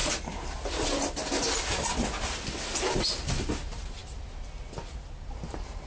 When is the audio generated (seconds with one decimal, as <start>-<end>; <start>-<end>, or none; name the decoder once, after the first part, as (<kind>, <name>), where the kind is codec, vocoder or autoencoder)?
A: none